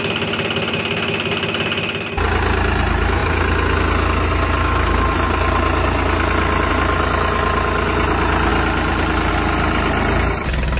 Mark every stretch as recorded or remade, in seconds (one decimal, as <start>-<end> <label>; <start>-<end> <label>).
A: 0.0-10.8 recorded